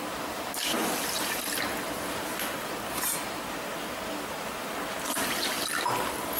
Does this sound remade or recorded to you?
recorded